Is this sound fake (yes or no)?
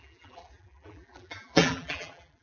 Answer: yes